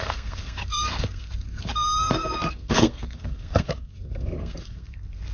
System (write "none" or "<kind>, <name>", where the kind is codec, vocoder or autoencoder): codec, SNAC